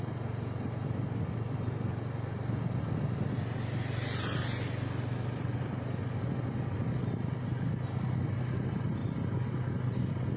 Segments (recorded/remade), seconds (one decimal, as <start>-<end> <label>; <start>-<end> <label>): 0.0-10.4 recorded